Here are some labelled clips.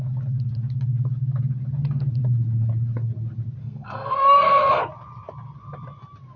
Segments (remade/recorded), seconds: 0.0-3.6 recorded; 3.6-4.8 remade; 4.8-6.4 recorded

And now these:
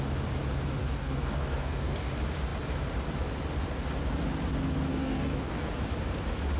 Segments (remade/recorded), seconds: 0.0-0.8 recorded; 0.8-2.1 remade; 2.1-4.9 recorded; 4.9-5.7 remade; 5.7-6.6 recorded

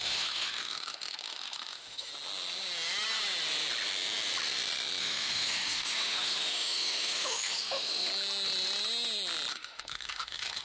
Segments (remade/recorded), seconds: 0.0-2.1 remade; 2.1-5.0 recorded; 5.0-8.1 remade; 8.1-9.5 recorded; 9.5-10.6 remade

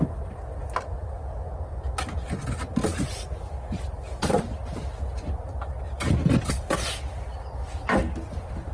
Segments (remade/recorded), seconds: 0.0-8.7 recorded

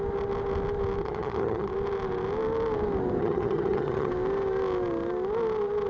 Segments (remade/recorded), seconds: 0.0-1.0 recorded; 1.0-1.7 remade; 1.7-3.2 recorded; 3.2-4.1 remade; 4.1-5.9 recorded

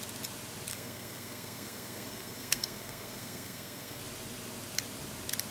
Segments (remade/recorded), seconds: 0.0-0.7 recorded; 0.7-4.0 remade; 4.0-5.5 recorded